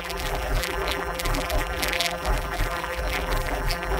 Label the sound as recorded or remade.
remade